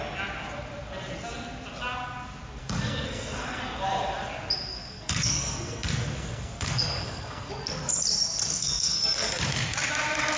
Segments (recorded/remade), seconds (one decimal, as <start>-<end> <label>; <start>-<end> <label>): 0.0-2.6 recorded; 2.6-3.6 remade; 3.6-4.7 recorded; 4.7-7.5 remade; 7.5-8.5 recorded; 8.5-9.3 remade; 9.3-10.4 recorded